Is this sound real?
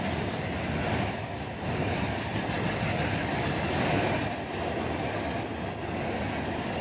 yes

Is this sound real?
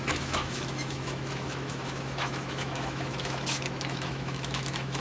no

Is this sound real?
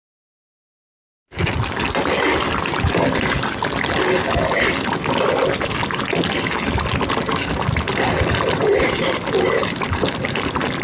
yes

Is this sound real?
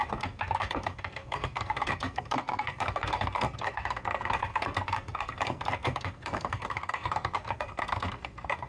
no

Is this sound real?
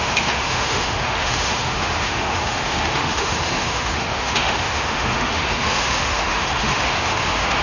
no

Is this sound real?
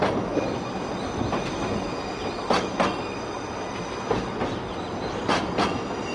yes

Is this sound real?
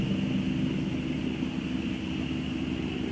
yes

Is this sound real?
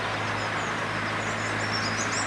yes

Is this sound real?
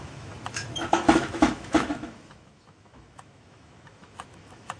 no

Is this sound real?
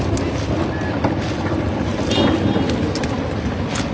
yes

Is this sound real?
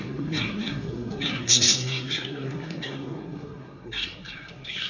no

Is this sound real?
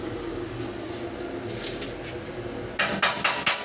yes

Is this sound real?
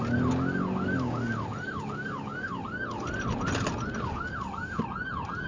yes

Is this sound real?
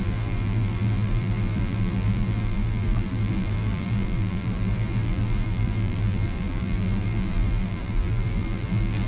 no